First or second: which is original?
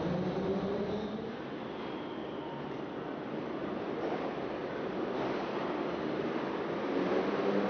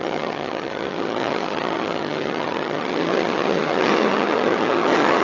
first